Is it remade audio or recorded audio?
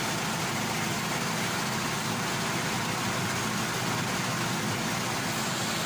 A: recorded